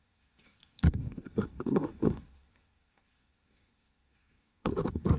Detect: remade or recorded remade